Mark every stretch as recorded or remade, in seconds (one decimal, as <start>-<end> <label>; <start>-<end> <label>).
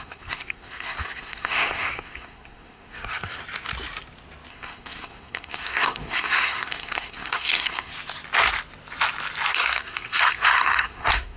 0.0-3.4 remade; 3.4-4.5 recorded; 4.5-7.9 remade; 7.9-9.5 recorded; 9.5-11.4 remade